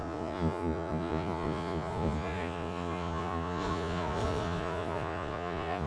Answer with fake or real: fake